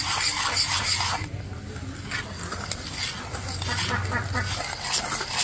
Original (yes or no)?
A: yes